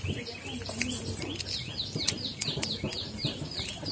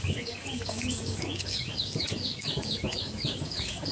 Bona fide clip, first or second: first